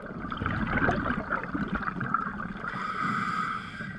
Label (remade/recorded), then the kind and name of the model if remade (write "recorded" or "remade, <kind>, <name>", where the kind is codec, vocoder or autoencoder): recorded